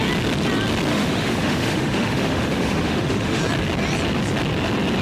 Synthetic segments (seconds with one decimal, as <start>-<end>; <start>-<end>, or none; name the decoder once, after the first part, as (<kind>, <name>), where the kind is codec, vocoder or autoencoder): 0.9-3.4 (autoencoder, DAC-VAE)